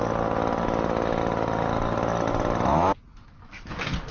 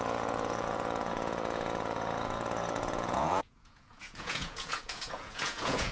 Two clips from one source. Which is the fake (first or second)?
second